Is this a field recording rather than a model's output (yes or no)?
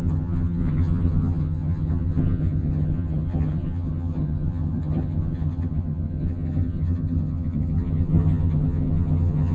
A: no